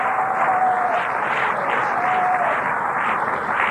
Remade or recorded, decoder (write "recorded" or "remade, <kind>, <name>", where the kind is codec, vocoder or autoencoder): recorded